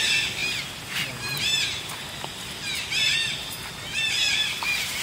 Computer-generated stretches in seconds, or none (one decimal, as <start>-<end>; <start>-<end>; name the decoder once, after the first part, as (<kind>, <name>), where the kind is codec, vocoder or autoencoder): none